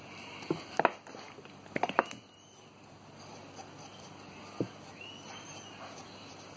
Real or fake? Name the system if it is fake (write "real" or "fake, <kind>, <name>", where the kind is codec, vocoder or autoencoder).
real